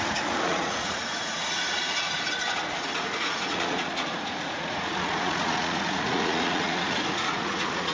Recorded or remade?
remade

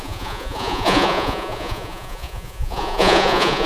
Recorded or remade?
remade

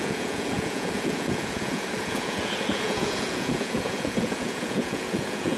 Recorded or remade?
remade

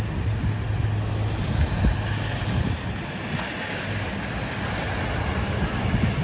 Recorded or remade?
recorded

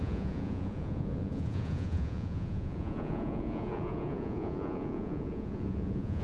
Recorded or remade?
remade